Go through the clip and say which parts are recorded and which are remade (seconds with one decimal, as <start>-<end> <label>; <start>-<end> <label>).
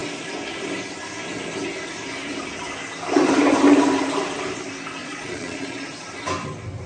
0.0-5.0 recorded; 5.0-6.0 remade; 6.0-6.9 recorded